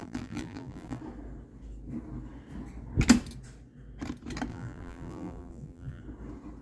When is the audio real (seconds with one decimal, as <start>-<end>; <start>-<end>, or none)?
1.0-4.5; 6.0-6.6